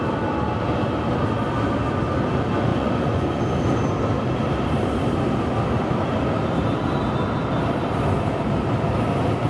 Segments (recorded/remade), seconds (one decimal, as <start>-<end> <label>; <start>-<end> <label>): 0.0-2.7 recorded; 2.7-3.4 remade; 3.4-9.5 recorded